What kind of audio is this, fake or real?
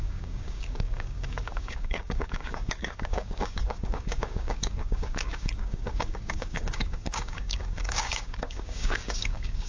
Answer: fake